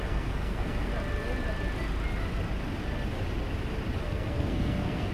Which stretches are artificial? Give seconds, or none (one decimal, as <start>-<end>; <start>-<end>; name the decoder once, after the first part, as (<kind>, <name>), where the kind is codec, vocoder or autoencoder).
0.0-0.9 (codec, SNAC); 4.0-5.1

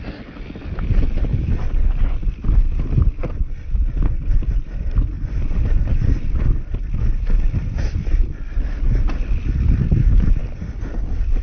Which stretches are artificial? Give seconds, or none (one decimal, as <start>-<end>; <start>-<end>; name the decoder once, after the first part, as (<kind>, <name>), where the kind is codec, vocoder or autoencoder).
none

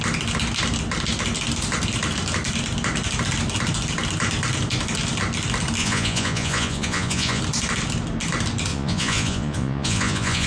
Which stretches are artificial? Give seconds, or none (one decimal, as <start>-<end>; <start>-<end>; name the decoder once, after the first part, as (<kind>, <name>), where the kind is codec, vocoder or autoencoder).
5.8-7.4 (vocoder, Vocos); 8.7-10.5

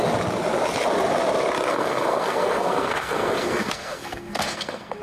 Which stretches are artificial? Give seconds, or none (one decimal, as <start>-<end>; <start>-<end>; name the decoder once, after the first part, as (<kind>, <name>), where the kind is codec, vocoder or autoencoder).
1.7-5.0 (codec, SNAC)

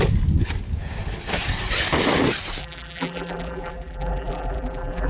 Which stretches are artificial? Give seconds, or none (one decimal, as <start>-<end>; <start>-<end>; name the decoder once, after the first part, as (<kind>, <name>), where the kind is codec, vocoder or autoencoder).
2.6-5.1 (vocoder, BigVGAN v2)

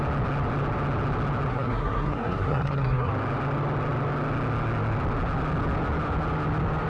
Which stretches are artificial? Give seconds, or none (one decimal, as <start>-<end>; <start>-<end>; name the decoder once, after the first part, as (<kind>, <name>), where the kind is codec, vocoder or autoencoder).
1.5-3.1 (codec, SNAC)